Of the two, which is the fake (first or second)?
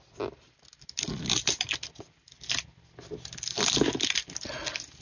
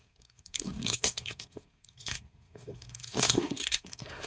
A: second